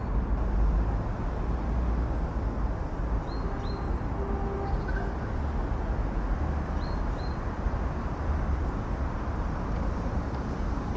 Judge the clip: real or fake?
real